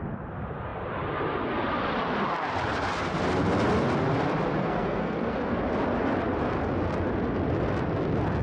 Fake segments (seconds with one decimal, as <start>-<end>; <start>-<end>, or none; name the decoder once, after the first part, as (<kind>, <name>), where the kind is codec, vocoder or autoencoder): 4.6-5.6 (codec, SNAC)